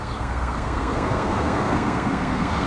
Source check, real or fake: fake